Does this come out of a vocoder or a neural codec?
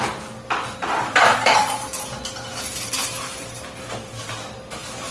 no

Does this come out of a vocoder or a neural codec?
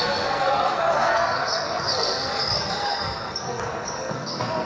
yes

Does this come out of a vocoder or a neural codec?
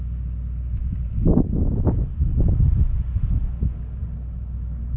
no